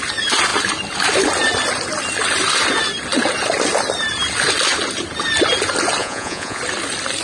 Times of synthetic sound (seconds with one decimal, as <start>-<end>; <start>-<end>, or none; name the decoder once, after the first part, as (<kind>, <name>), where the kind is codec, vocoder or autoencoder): 6.0-6.6 (vocoder, Vocos)